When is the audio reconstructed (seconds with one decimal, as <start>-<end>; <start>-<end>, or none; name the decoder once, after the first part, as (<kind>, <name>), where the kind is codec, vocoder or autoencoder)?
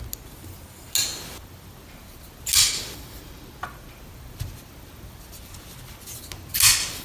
none